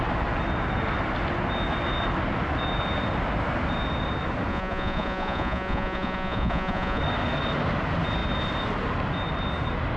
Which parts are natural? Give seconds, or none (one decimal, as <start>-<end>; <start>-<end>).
0.0-4.5; 7.0-10.0